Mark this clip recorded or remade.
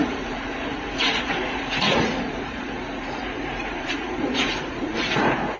remade